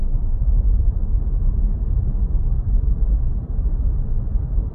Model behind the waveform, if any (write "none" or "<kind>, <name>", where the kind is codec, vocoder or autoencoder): none